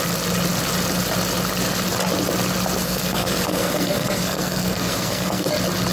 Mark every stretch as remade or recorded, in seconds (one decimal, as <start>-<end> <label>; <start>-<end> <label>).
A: 0.0-2.8 recorded; 2.8-5.5 remade; 5.5-5.9 recorded